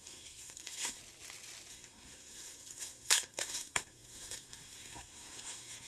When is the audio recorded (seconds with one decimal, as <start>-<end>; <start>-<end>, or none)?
1.0-1.7